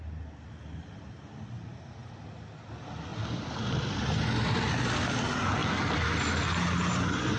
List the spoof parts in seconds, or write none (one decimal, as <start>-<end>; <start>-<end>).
5.6-6.4